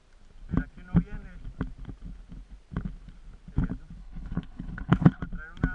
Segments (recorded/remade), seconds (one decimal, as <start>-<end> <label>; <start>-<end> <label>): 0.0-4.0 recorded; 4.0-5.2 remade; 5.2-5.7 recorded